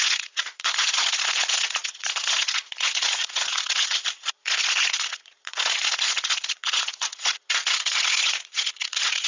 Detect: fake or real fake